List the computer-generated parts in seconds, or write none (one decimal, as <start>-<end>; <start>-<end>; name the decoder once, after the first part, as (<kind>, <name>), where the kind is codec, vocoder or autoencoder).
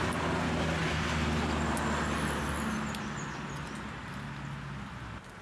none